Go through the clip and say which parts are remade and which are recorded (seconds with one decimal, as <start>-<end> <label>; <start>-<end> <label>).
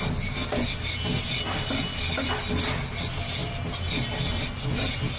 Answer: 0.0-5.2 recorded